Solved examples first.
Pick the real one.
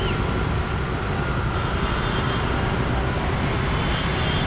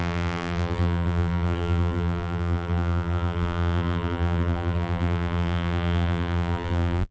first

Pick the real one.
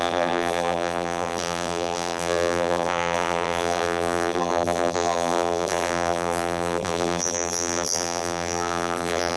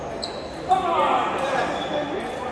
second